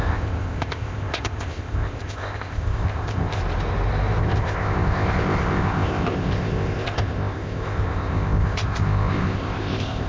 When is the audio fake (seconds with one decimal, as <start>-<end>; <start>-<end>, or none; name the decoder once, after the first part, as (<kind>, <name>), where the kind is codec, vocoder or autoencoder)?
0.0-3.4 (codec, ZipCodec); 4.2-10.1